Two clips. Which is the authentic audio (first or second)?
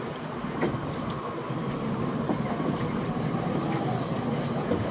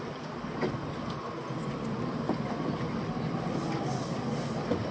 second